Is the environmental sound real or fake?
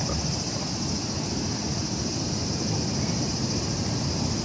real